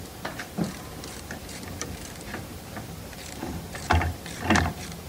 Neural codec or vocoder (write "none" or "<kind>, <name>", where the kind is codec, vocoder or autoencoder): vocoder, BigVGAN v2